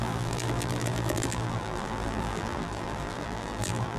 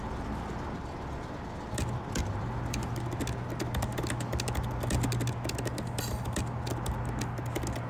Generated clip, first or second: first